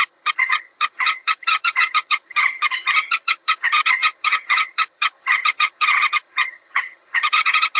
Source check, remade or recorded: remade